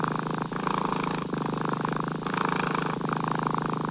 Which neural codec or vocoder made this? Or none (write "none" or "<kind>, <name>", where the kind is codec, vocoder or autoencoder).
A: none